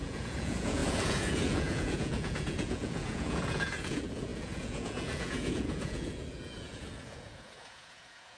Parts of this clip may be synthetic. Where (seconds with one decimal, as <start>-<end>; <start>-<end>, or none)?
0.0-8.4